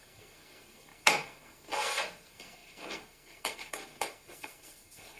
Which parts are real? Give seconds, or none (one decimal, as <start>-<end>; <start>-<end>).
none